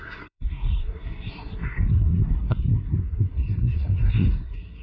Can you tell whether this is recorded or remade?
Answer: remade